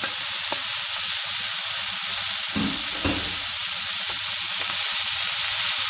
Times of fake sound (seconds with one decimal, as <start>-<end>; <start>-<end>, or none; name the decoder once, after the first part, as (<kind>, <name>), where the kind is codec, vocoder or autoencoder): none